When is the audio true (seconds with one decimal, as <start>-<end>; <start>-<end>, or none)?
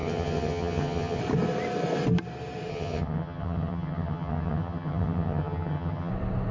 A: 1.2-2.7; 6.1-6.5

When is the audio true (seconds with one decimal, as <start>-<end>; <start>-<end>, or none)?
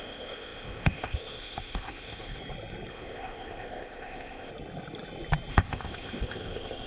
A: 2.4-2.9; 4.5-5.5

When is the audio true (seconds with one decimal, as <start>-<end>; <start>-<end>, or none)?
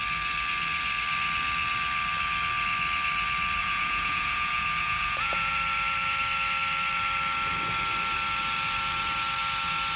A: 0.0-3.6; 5.5-10.0